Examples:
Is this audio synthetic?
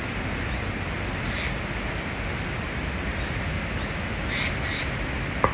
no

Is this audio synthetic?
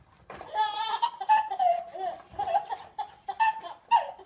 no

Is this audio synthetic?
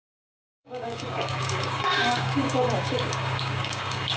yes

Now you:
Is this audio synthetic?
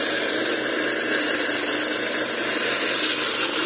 no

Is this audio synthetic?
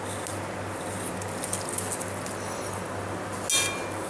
no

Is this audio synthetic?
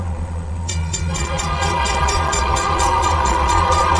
yes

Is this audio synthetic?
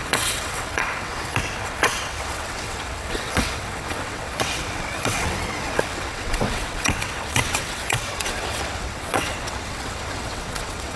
yes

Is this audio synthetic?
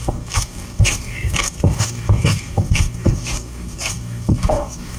yes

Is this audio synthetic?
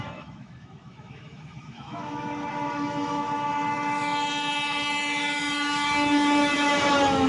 yes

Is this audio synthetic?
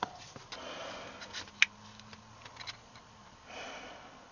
no